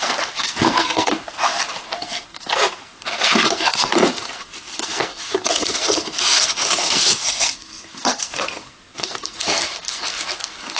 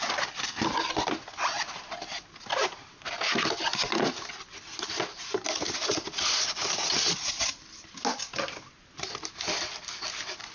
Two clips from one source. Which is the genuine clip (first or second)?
second